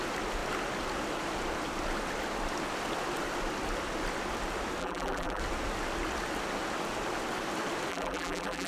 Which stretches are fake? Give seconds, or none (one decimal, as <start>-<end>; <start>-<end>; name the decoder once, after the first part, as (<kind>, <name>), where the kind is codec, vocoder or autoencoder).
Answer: 4.8-5.4 (vocoder, BigVGAN v2); 7.9-8.7